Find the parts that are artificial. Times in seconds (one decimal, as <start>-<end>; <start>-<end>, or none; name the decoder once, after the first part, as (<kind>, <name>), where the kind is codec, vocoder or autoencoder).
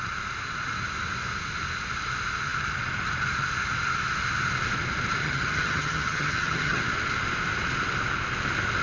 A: 5.2-6.8 (vocoder, HiFi-GAN)